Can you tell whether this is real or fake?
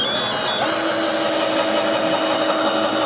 real